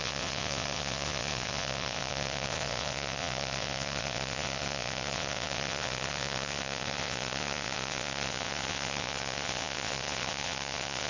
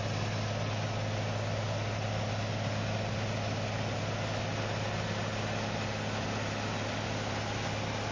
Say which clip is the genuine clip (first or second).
second